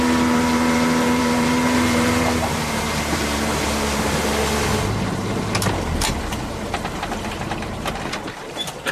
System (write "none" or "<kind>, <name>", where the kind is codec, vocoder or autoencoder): vocoder, BigVGAN v2